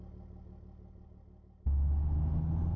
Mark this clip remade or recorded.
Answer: recorded